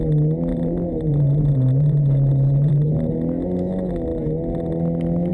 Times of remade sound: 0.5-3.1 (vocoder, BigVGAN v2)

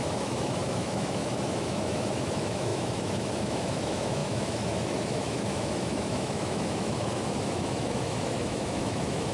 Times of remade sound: 0.0-9.3 (autoencoder, DAC-VAE)